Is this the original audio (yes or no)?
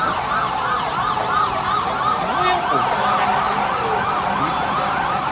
yes